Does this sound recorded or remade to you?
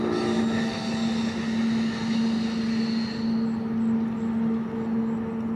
recorded